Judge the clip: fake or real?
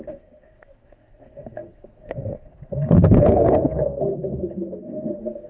fake